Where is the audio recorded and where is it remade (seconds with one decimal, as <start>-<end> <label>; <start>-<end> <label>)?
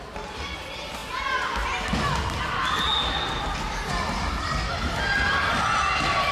0.0-6.3 recorded